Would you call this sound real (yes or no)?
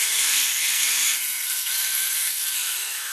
no